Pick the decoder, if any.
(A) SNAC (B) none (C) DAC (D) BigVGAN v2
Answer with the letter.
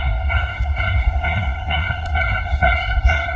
A